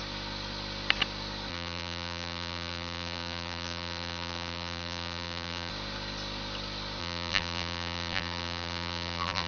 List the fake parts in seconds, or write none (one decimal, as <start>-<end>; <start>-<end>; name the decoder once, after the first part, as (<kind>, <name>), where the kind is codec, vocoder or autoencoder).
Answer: 1.5-5.7 (vocoder, BigVGAN v2); 7.0-9.5